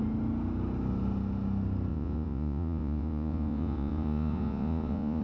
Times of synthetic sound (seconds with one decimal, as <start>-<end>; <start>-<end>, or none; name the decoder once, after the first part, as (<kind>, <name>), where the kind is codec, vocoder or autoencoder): 1.9-5.2 (vocoder, Vocos)